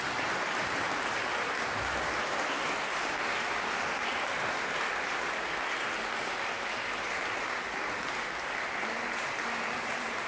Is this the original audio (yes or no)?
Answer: yes